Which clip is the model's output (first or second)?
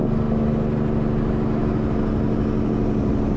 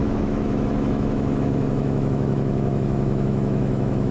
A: second